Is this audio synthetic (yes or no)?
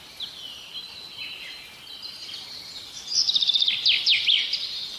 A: no